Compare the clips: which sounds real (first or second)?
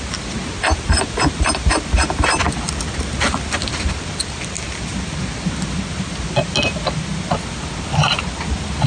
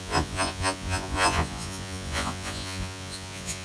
first